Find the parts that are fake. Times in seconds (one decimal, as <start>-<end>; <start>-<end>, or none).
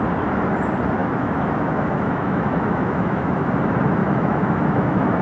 1.0-3.5; 4.0-5.2